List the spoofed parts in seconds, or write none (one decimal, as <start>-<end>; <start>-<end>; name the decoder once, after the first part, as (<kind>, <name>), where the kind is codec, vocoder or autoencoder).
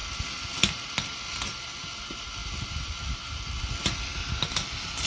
none